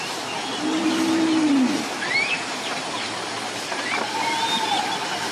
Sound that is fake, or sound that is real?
real